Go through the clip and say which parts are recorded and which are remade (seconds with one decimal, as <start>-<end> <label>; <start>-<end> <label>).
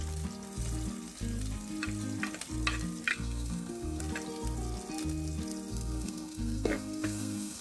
0.0-3.1 recorded; 3.1-4.0 remade; 4.0-5.7 recorded; 5.7-7.6 remade